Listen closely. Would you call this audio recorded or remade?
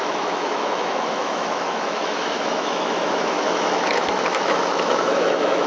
remade